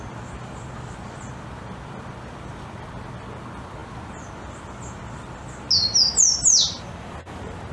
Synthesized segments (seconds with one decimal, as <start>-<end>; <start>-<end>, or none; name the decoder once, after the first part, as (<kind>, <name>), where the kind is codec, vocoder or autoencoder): none